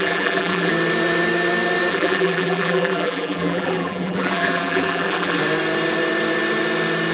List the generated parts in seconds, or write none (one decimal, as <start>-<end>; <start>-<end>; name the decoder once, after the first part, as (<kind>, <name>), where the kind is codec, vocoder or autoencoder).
0.0-0.7 (vocoder, BigVGAN v2); 1.9-5.4